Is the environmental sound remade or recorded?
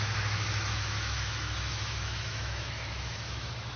remade